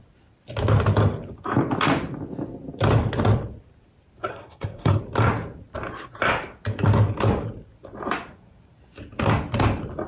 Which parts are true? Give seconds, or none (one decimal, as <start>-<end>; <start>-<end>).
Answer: 0.0-4.3; 5.0-10.1